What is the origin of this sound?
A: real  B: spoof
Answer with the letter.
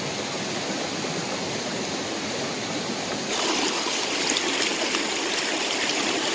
A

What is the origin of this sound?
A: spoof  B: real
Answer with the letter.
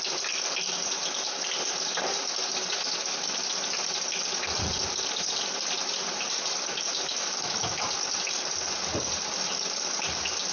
B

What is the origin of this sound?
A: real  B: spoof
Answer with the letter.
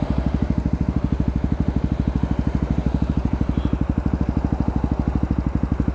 A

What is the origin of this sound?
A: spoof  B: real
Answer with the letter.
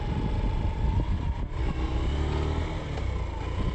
B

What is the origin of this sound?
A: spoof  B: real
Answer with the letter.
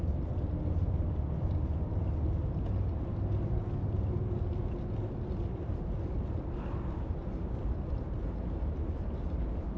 B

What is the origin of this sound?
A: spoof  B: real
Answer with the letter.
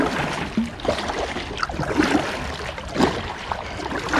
B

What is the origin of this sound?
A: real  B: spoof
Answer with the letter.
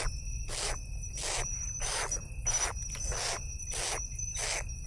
A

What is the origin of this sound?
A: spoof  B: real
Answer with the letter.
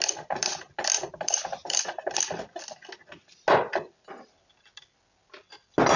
B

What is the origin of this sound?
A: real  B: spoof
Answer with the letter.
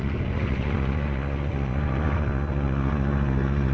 B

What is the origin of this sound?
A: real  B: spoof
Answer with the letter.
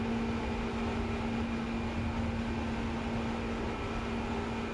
A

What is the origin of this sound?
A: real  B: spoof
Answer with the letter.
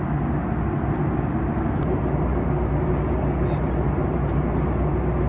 A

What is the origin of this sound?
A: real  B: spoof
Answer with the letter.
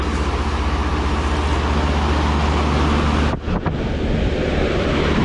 A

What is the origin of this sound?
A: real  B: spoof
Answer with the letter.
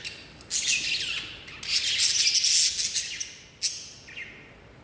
A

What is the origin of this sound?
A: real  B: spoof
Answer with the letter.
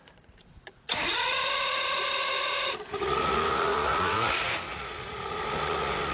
B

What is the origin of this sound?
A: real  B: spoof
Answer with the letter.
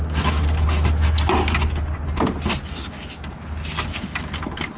A